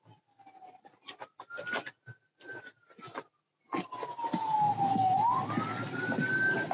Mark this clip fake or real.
real